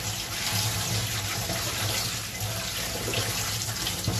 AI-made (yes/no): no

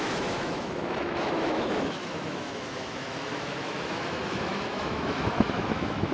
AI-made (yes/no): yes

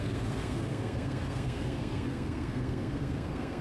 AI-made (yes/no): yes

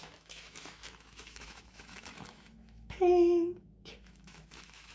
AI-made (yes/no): yes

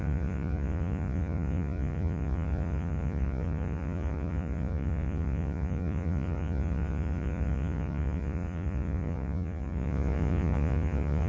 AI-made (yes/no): yes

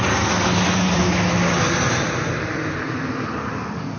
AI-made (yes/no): no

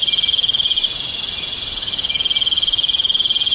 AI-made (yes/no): no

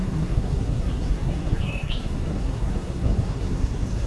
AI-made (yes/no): yes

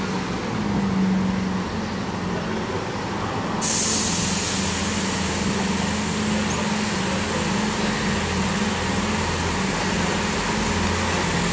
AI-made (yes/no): no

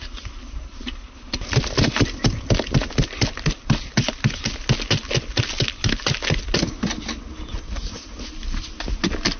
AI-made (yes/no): no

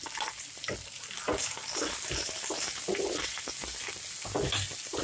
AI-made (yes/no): no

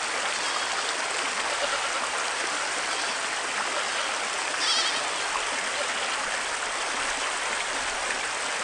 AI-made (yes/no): no